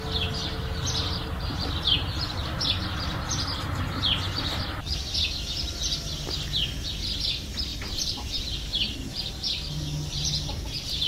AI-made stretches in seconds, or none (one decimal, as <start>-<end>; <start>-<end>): 7.7-8.4